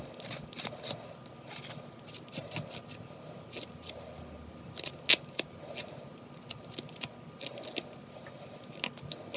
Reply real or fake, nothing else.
real